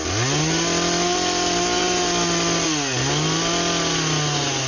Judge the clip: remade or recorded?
recorded